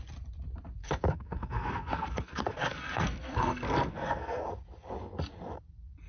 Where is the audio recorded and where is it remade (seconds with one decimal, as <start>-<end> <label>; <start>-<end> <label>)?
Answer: 0.0-0.8 recorded; 0.8-4.4 remade; 4.4-6.1 recorded